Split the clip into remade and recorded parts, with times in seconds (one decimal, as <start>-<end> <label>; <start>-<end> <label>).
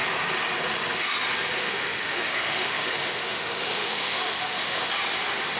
0.0-1.6 recorded; 1.6-4.8 remade; 4.8-5.6 recorded